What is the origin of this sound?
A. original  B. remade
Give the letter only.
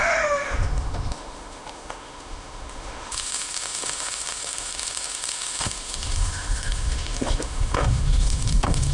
B